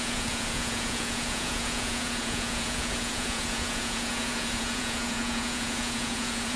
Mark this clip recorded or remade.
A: remade